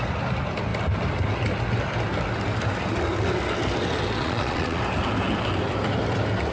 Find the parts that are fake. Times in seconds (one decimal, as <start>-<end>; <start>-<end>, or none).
4.2-4.8